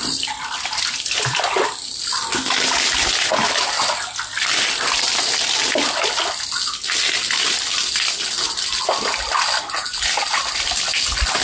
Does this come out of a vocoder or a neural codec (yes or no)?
no